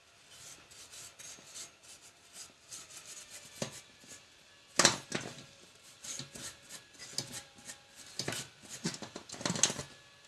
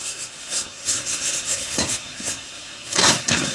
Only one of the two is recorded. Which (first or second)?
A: first